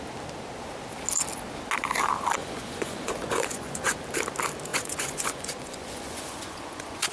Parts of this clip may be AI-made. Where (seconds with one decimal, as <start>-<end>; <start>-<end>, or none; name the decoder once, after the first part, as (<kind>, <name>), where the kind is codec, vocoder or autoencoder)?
2.4-4.0 (vocoder, Vocos); 4.7-7.1